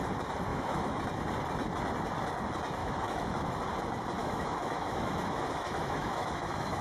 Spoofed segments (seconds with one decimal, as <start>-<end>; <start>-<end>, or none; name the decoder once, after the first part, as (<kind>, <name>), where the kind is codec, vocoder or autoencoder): 0.5-1.0 (autoencoder, DAC-VAE); 2.8-3.5; 4.2-6.8